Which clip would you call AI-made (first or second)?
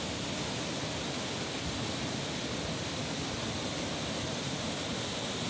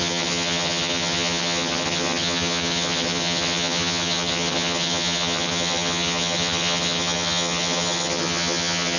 second